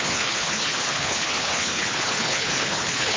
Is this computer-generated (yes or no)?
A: yes